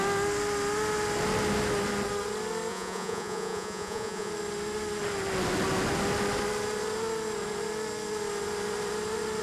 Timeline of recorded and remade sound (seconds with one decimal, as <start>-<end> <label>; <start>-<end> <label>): 0.0-2.7 recorded; 2.7-4.3 remade; 4.3-9.4 recorded

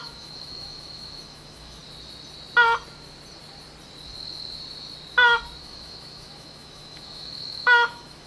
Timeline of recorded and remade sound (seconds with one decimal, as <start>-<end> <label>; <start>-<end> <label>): 0.0-1.8 remade; 1.8-5.6 recorded; 5.6-8.3 remade